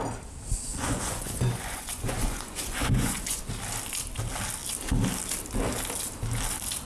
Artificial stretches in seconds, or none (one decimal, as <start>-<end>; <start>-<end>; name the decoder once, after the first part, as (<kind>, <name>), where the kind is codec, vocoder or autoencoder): 0.7-3.4 (vocoder, Vocos)